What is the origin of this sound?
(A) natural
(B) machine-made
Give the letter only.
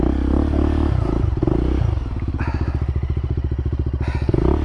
A